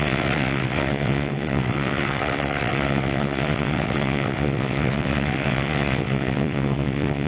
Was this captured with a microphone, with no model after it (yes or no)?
no